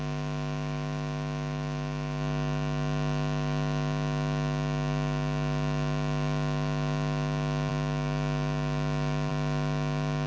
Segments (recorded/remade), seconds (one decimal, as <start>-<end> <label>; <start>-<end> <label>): 0.0-10.3 recorded